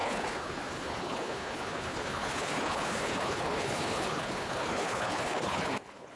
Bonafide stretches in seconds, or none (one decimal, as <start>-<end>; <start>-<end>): none